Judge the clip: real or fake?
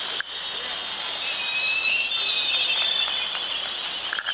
real